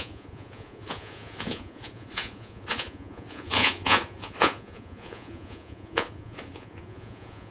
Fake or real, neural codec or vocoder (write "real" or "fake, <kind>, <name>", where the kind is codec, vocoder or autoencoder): fake, vocoder, Vocos